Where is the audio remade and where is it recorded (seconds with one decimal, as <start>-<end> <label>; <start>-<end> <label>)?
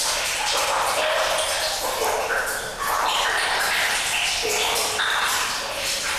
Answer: 0.0-6.2 recorded